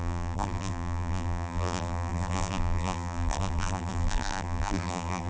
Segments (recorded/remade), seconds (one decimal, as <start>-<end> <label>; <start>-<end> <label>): 0.0-5.3 remade